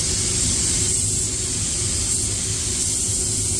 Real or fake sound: real